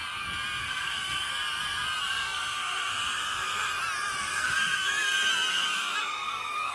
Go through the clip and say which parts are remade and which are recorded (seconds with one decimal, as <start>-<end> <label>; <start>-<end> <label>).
0.0-0.6 recorded; 0.6-1.3 remade; 1.3-2.0 recorded; 2.0-3.7 remade; 3.7-4.2 recorded; 4.2-4.9 remade; 4.9-5.5 recorded; 5.5-6.7 remade